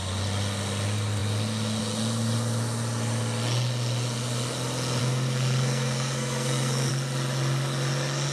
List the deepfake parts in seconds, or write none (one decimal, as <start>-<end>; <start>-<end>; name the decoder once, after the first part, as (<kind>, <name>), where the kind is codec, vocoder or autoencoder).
5.0-6.9 (codec, SNAC)